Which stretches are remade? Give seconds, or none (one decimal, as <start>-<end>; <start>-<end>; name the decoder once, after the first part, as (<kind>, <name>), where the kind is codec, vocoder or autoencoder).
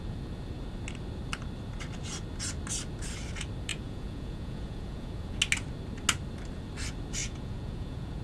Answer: 3.7-5.4 (vocoder, Vocos); 7.2-8.2